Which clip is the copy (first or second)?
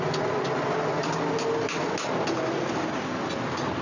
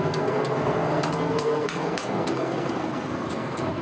second